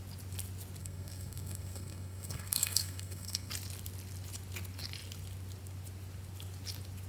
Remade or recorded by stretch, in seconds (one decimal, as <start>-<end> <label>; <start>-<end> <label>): 0.0-0.8 recorded; 0.8-3.5 remade; 3.5-7.1 recorded